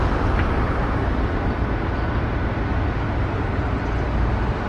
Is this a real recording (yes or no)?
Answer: yes